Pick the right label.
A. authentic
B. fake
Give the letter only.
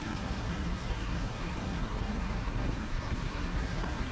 B